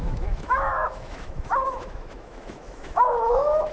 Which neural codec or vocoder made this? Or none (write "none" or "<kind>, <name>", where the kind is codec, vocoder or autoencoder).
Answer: autoencoder, DAC-VAE